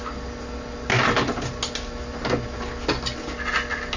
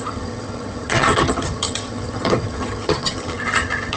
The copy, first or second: second